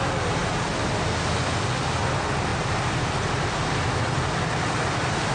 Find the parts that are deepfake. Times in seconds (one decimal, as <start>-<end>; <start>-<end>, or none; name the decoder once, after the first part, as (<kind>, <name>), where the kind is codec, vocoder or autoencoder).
none